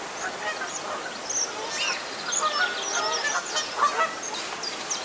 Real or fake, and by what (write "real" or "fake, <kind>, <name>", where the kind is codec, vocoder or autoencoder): real